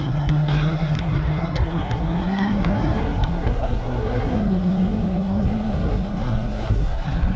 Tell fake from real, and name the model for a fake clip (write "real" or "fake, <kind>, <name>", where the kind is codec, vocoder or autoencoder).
fake, codec, SNAC